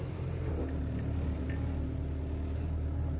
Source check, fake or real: real